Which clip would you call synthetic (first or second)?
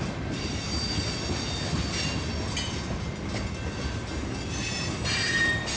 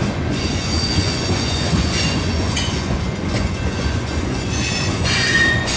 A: second